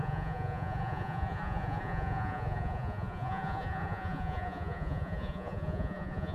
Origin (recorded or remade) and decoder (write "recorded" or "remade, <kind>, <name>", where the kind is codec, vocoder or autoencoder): remade, vocoder, Vocos